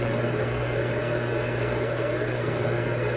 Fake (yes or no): yes